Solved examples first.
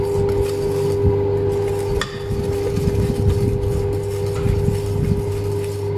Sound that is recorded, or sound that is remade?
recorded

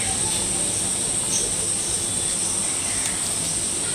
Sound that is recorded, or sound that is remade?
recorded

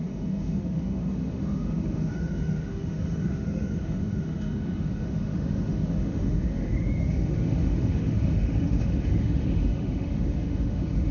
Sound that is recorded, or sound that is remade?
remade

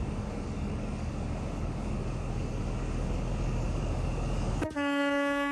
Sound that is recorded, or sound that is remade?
remade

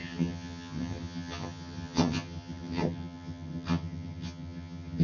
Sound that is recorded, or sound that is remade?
remade